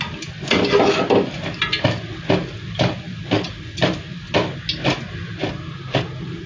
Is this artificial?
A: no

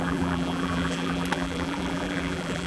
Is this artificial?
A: yes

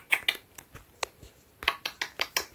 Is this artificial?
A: no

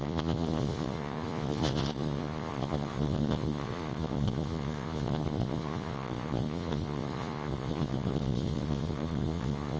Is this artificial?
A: yes